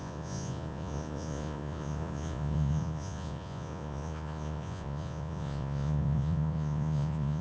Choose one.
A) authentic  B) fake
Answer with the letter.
B